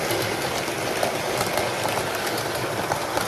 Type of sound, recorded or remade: recorded